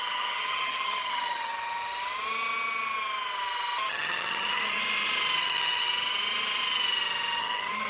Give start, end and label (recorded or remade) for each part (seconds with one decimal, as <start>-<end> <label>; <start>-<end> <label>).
0.0-1.5 remade; 1.5-3.9 recorded; 3.9-4.8 remade; 4.8-5.4 recorded; 5.4-5.9 remade; 5.9-7.4 recorded; 7.4-7.9 remade